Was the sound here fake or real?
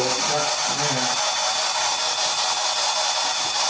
real